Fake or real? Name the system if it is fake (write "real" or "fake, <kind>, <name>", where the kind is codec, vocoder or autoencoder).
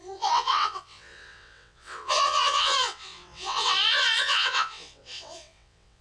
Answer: fake, vocoder, WaveNeXt